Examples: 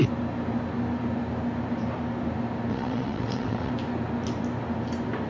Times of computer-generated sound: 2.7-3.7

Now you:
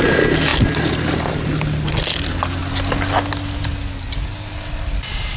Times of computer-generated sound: none

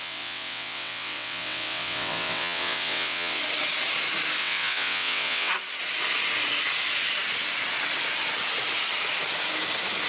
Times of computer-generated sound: 0.0-3.4; 4.4-5.5

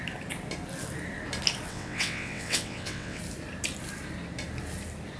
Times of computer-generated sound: 1.7-3.2

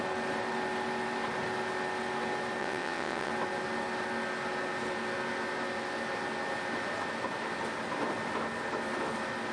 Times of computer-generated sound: 2.6-3.3

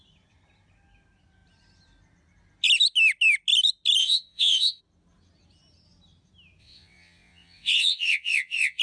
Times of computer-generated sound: 4.0-4.8; 6.6-8.8